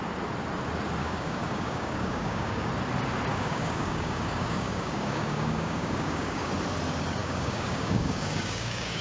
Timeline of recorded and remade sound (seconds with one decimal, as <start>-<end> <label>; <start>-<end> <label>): 0.0-1.0 recorded; 1.0-2.7 remade; 2.7-3.3 recorded; 3.3-6.5 remade; 6.5-7.2 recorded; 7.2-9.0 remade